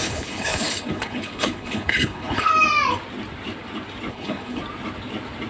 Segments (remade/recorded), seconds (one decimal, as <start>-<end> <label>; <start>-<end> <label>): 0.0-2.5 remade; 2.5-4.1 recorded; 4.1-4.6 remade; 4.6-5.5 recorded